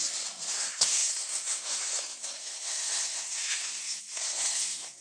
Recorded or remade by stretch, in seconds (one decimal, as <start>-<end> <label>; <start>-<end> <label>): 0.0-0.5 recorded; 0.5-5.0 remade